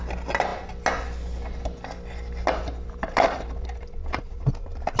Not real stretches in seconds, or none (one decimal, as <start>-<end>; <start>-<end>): none